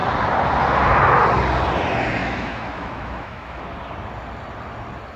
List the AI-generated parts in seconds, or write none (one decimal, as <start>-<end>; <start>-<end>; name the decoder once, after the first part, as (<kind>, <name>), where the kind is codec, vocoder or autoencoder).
2.2-3.6 (autoencoder, DAC-VAE)